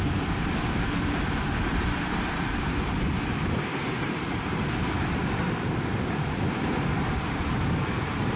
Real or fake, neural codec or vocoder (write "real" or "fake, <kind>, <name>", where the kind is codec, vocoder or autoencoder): fake, vocoder, BigVGAN v2